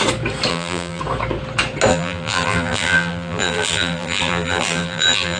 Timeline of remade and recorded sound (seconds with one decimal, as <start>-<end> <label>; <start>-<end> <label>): 0.0-0.5 recorded; 0.5-1.0 remade; 1.0-1.9 recorded; 1.9-5.4 remade